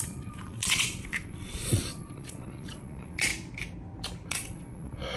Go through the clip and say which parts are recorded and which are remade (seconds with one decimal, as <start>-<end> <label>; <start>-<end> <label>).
0.0-3.3 remade; 3.3-4.3 recorded; 4.3-5.2 remade

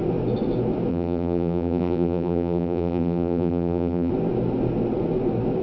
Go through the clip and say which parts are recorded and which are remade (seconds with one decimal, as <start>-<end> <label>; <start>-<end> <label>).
0.0-0.9 recorded; 0.9-4.1 remade; 4.1-5.6 recorded

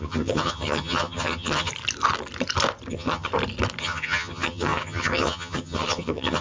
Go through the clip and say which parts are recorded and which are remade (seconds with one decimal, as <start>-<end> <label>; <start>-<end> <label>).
0.0-1.7 remade; 1.7-2.9 recorded; 2.9-3.3 remade; 3.3-3.8 recorded; 3.8-6.4 remade

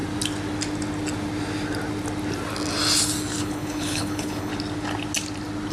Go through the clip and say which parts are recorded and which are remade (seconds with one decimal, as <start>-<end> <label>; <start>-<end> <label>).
0.0-3.4 recorded; 3.4-4.5 remade; 4.5-5.7 recorded

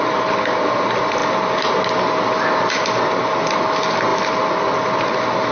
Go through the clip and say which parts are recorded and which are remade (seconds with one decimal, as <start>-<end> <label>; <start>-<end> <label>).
0.0-5.5 recorded

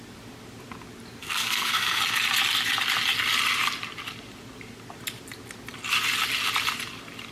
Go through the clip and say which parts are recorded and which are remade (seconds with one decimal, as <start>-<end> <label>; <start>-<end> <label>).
0.0-1.2 recorded; 1.2-2.0 remade; 2.0-7.3 recorded